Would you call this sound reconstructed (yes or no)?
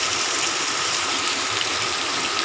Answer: no